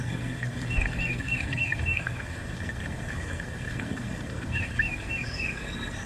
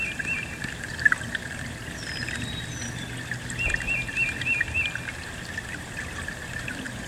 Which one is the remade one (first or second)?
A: first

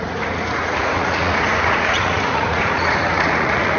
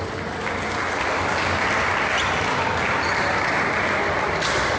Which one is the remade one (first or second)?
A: first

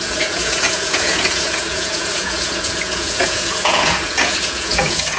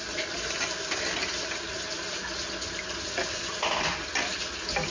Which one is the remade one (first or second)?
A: first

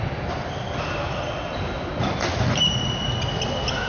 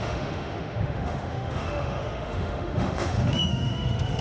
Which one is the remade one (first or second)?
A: second